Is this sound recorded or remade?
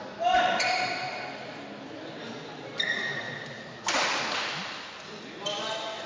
recorded